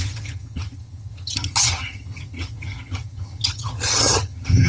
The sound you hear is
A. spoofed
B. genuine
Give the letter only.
A